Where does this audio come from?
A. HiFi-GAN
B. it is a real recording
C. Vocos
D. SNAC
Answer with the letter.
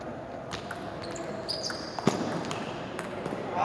B